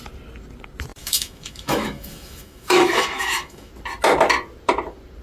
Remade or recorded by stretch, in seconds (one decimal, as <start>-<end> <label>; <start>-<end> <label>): 0.0-1.0 recorded; 1.0-3.7 remade; 3.7-5.2 recorded